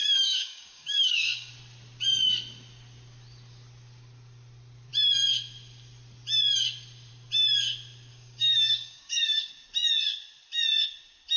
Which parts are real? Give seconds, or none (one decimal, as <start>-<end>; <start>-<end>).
1.5-8.1; 9.5-11.4